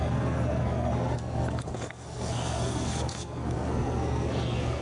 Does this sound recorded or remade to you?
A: remade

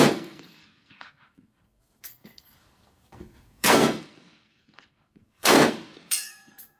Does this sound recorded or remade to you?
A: remade